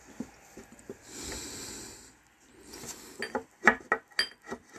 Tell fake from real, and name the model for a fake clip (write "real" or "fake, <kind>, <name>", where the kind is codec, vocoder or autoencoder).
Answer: real